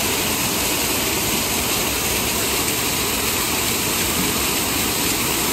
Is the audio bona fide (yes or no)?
no